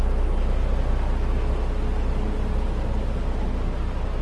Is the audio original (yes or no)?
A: yes